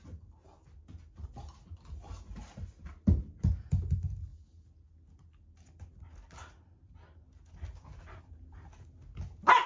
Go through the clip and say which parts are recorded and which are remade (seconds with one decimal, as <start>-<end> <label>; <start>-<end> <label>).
0.0-9.7 recorded